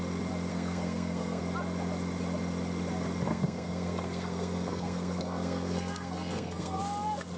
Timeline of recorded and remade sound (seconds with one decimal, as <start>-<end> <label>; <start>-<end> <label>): 0.0-0.5 recorded; 0.5-1.4 remade; 1.4-3.3 recorded; 3.3-6.8 remade; 6.8-7.4 recorded